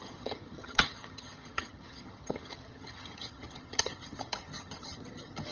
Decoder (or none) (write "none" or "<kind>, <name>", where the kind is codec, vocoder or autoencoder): vocoder, HiFi-GAN